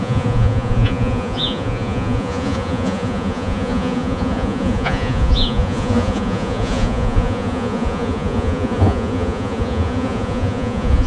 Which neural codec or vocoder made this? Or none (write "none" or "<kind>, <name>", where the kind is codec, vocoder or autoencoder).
vocoder, Vocos